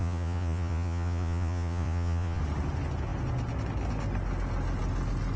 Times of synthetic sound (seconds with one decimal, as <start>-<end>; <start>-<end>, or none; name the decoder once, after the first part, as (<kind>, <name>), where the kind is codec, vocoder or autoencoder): 0.0-2.4 (vocoder, Vocos)